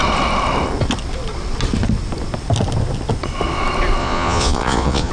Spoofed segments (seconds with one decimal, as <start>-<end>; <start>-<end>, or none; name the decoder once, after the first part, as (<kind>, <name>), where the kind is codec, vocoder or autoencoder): 4.0-5.1 (vocoder, Vocos)